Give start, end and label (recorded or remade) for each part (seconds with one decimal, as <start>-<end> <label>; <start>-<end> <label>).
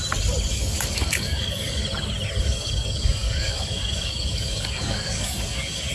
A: 0.0-0.5 recorded; 0.5-1.8 remade; 1.8-2.4 recorded; 2.4-5.9 remade